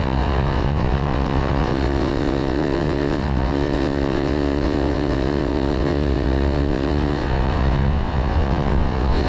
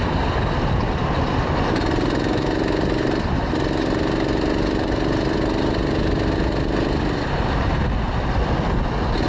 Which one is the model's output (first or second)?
first